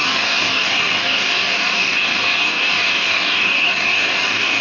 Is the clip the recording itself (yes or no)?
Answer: no